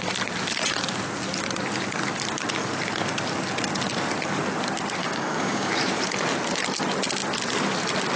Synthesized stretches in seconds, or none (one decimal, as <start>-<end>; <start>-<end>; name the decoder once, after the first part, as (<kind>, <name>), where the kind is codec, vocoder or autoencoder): 5.0-5.7 (codec, DAC)